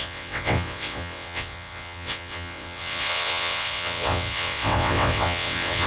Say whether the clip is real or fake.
fake